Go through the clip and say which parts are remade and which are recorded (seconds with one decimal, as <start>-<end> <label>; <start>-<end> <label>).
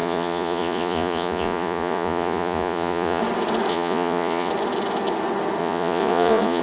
0.0-3.2 remade; 3.2-3.7 recorded; 3.7-4.5 remade; 4.5-5.6 recorded; 5.6-6.6 remade